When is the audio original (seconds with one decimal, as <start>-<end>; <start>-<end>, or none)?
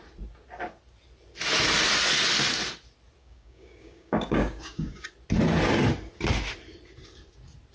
0.0-3.2; 5.1-7.7